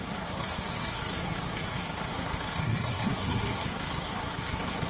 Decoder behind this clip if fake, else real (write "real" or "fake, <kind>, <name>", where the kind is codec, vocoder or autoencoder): fake, codec, SNAC